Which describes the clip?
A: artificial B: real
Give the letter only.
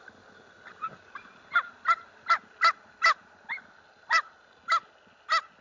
B